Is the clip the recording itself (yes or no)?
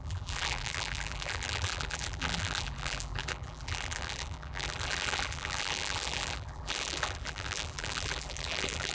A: no